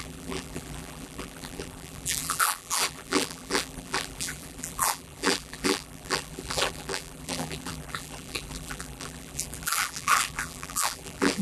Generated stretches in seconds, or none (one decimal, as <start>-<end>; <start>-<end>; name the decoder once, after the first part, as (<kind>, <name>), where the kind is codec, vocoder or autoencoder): 0.0-11.4 (vocoder, BigVGAN v2)